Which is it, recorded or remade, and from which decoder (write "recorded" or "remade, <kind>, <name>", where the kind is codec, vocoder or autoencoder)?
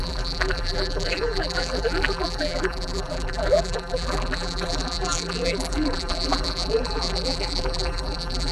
remade, vocoder, BigVGAN v2